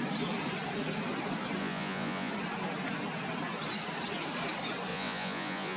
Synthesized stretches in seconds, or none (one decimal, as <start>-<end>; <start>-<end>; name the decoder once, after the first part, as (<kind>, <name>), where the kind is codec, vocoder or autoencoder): 1.6-2.3 (vocoder, Vocos); 4.9-5.8